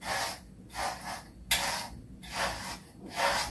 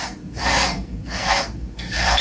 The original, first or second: first